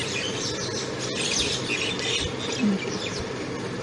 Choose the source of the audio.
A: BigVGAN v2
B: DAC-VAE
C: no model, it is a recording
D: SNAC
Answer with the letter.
C